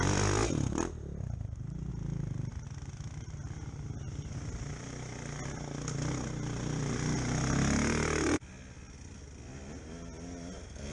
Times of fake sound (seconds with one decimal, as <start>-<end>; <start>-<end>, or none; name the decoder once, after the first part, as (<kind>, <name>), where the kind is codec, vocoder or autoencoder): none

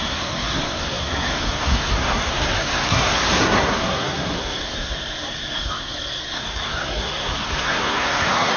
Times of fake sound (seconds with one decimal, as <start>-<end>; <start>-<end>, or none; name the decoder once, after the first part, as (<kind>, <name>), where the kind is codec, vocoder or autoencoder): 0.0-8.6 (codec, SNAC)

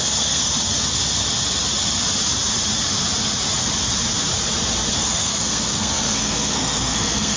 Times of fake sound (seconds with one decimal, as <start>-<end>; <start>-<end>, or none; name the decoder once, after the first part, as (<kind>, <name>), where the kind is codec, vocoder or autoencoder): 0.0-0.5 (codec, SNAC); 4.9-7.4

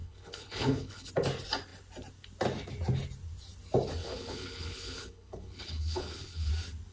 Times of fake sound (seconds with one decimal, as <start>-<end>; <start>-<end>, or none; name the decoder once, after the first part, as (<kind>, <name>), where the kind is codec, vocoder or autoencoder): 0.0-1.1 (codec, HILCodec); 4.0-6.5

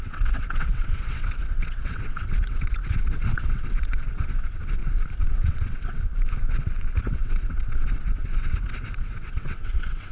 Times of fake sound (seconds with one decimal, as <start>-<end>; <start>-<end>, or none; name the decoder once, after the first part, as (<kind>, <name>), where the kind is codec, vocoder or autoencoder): 0.0-4.8 (vocoder, WaveNeXt); 5.3-6.1; 7.0-10.1

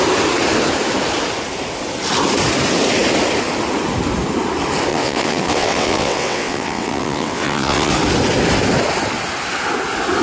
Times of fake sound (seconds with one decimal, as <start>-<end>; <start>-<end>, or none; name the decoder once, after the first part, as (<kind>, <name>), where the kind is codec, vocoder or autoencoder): 4.9-7.9 (vocoder, WaveNeXt)

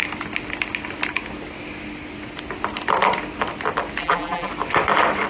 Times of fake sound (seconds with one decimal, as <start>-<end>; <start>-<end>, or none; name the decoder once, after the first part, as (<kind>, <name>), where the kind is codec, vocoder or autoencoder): 4.0-4.5 (vocoder, BigVGAN v2)